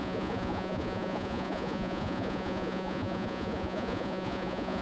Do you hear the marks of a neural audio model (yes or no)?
yes